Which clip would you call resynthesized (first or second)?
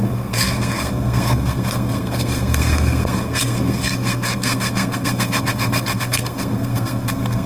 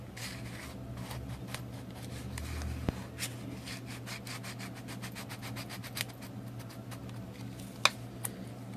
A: first